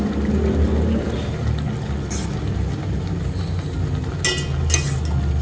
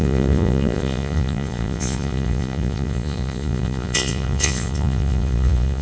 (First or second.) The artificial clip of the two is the second